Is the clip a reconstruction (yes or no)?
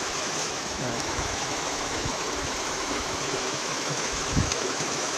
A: yes